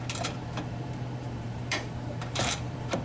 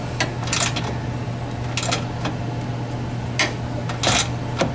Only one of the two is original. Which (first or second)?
second